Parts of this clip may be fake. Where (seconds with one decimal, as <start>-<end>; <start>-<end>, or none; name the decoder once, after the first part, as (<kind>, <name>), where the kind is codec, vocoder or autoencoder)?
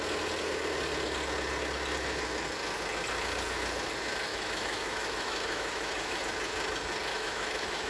4.3-6.2 (autoencoder, DAC-VAE); 7.1-7.9